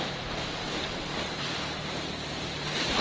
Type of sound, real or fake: fake